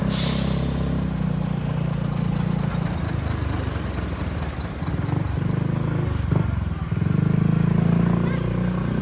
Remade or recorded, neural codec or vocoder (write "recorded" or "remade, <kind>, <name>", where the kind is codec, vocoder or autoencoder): recorded